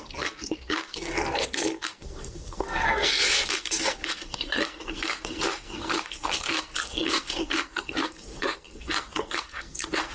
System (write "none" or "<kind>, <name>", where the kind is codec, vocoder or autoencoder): codec, SNAC